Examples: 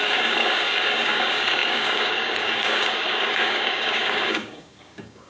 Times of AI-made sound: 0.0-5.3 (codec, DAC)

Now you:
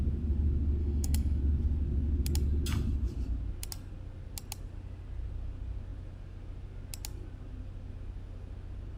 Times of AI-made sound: 0.8-1.4 (codec, DAC)

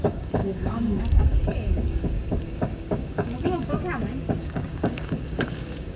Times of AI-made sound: 0.0-3.8 (codec, DAC); 4.4-6.0

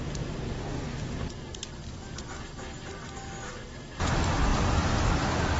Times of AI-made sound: 0.6-1.1 (codec, DAC)

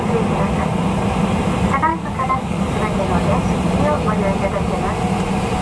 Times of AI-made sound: 1.9-2.6 (codec, DAC)

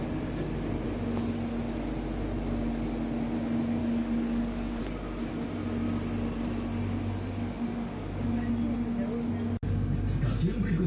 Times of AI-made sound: 3.8-4.8 (codec, DAC); 7.4-8.5